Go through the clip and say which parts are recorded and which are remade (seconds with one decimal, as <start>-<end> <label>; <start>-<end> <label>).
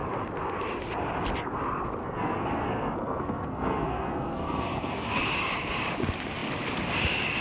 0.0-2.0 recorded; 2.0-5.2 remade; 5.2-7.4 recorded